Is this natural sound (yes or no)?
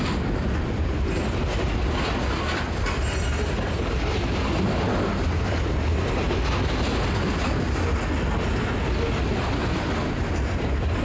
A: yes